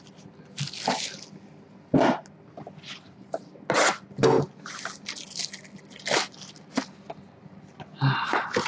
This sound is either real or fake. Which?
real